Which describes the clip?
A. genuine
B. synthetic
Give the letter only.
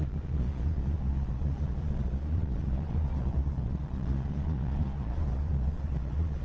B